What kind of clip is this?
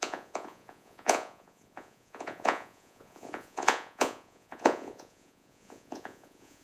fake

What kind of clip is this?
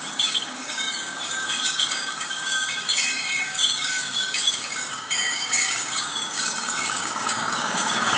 fake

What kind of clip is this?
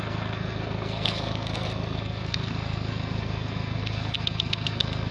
fake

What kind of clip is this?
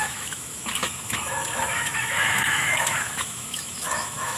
fake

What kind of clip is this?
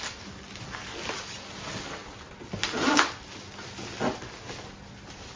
real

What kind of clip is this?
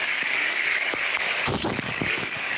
fake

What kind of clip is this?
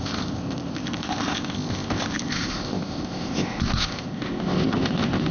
fake